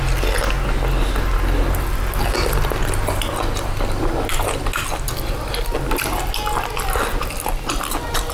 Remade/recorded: recorded